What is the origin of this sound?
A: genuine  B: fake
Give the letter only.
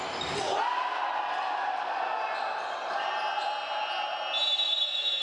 A